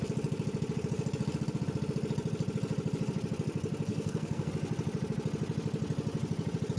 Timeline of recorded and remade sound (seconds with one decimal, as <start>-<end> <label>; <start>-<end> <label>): 0.0-3.9 recorded; 3.9-4.5 remade; 4.5-6.8 recorded